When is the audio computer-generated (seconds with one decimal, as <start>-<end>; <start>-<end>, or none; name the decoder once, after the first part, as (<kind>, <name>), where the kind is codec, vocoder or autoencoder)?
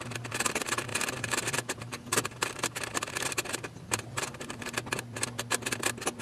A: 0.9-4.6 (vocoder, BigVGAN v2)